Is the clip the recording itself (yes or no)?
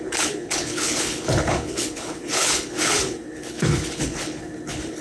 no